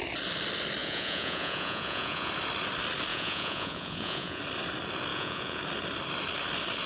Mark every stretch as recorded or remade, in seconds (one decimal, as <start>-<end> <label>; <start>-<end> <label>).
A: 0.0-0.8 recorded; 0.8-2.3 remade; 2.3-3.1 recorded; 3.1-4.4 remade; 4.4-5.1 recorded; 5.1-5.6 remade; 5.6-6.9 recorded